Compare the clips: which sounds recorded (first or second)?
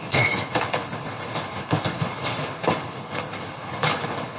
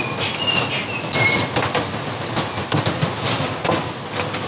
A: second